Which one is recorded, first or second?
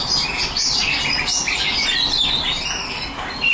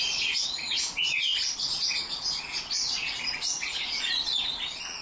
first